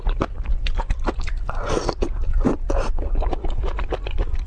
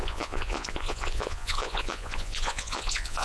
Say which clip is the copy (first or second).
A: second